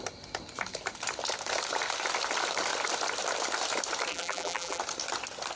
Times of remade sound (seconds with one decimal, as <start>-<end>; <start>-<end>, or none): 4.1-4.8